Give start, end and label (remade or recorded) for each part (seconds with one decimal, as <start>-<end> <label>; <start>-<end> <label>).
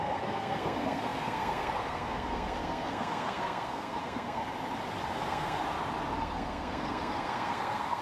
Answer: 0.0-4.5 remade; 4.5-5.1 recorded; 5.1-5.6 remade; 5.6-6.2 recorded; 6.2-8.0 remade